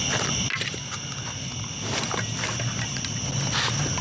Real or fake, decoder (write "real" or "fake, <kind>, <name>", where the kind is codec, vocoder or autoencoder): real